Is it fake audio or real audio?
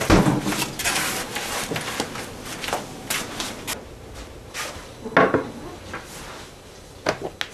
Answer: real